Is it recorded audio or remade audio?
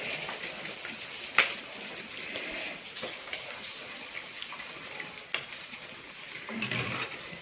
recorded